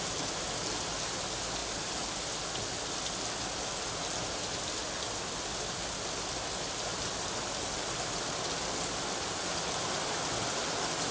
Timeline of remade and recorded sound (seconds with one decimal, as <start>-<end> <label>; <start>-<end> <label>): 0.0-6.9 recorded; 6.9-7.9 remade; 7.9-11.1 recorded